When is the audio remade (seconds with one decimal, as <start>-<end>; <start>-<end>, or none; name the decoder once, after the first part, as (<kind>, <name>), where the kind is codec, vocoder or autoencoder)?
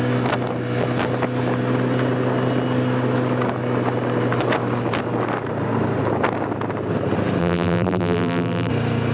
7.4-8.7 (vocoder, BigVGAN v2)